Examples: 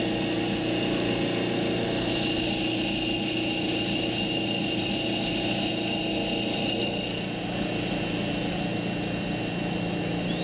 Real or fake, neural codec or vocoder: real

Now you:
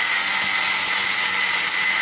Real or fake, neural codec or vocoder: real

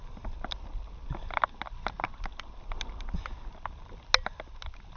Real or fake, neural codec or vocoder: real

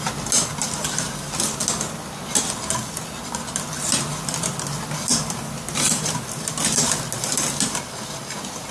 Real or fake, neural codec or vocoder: real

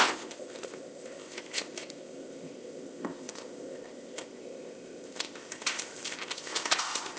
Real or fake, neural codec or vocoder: fake, codec, ZipCodec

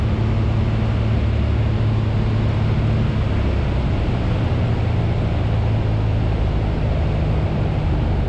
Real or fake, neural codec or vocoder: real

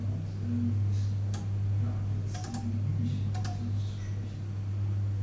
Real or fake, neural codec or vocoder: real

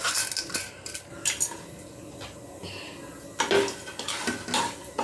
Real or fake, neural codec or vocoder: real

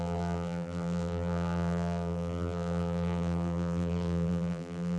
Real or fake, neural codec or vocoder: fake, vocoder, BigVGAN v2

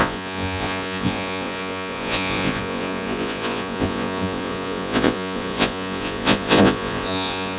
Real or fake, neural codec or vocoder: fake, vocoder, Vocos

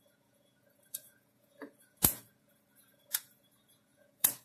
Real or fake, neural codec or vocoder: fake, vocoder, Vocos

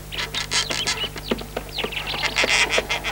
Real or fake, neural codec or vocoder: real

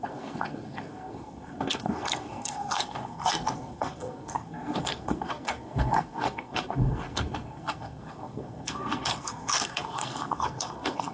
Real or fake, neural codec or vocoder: fake, codec, SNAC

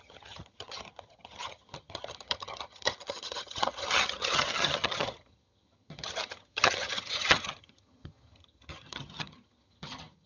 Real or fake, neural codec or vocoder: fake, vocoder, HiFi-GAN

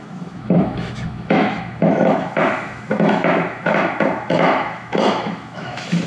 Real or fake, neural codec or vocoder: fake, autoencoder, DAC-VAE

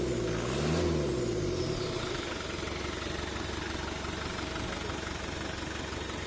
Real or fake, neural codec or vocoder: real